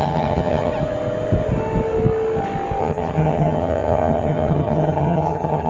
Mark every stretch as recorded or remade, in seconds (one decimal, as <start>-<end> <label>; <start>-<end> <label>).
0.0-0.7 remade; 0.7-2.8 recorded; 2.8-5.7 remade